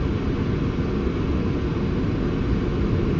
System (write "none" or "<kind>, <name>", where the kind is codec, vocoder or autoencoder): none